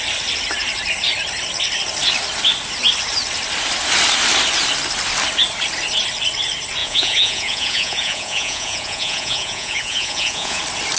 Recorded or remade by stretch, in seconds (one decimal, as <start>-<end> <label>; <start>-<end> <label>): 0.0-6.8 recorded; 6.8-10.6 remade; 10.6-11.0 recorded